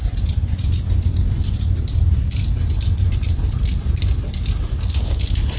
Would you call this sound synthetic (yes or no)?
no